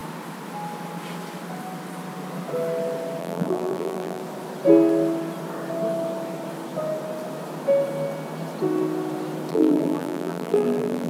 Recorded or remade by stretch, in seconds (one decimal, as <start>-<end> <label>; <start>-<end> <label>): 0.0-3.2 recorded; 3.2-4.2 remade; 4.2-9.5 recorded; 9.5-11.1 remade